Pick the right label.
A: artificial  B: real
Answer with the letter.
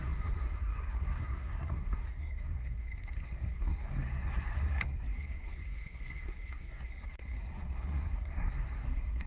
A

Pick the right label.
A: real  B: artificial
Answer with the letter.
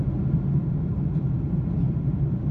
A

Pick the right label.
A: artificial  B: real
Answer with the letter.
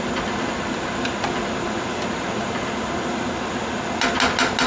B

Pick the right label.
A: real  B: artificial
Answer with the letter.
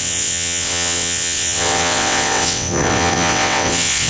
B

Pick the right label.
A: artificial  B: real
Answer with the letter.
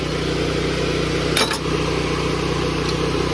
B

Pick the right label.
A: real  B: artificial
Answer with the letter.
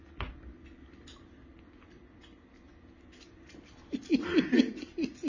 A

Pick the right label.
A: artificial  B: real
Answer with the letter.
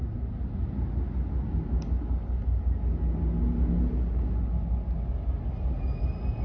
B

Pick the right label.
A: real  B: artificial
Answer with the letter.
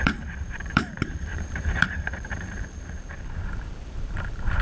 B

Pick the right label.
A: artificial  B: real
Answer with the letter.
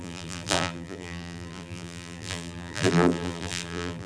A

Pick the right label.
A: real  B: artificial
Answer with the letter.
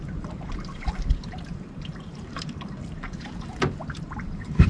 B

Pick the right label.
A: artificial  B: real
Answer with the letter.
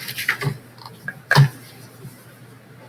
B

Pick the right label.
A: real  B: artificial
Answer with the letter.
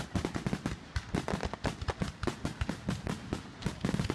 A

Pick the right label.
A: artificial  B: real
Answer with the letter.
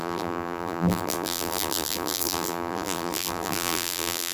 A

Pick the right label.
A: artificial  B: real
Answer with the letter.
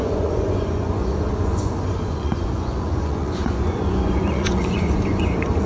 A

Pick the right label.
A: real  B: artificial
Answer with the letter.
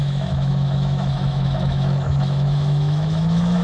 B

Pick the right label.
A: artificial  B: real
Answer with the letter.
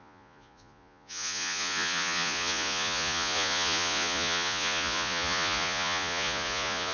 A